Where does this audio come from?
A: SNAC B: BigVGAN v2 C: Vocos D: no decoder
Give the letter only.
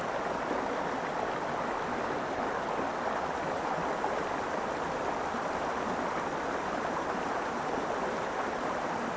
D